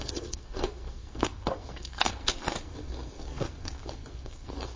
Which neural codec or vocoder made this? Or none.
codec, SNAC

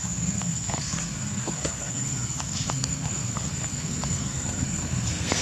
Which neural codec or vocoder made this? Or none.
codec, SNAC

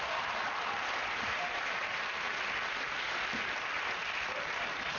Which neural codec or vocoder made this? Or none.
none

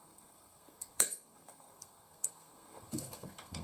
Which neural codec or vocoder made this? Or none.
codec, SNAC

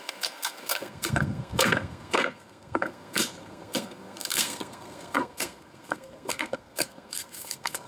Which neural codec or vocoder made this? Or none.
codec, SNAC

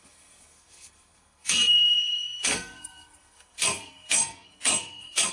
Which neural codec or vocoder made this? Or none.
codec, SNAC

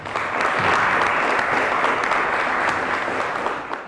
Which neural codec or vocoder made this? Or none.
none